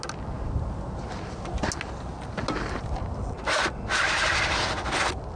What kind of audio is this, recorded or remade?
recorded